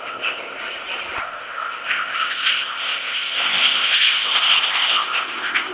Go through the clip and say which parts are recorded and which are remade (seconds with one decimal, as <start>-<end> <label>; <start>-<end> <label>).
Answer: 0.0-0.6 remade; 0.6-1.2 recorded; 1.2-5.7 remade